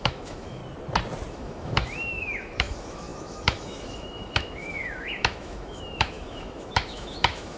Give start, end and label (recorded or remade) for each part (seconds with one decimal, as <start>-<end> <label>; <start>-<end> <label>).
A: 0.0-0.6 remade; 0.6-1.3 recorded; 1.3-7.6 remade